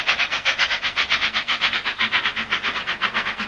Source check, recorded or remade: remade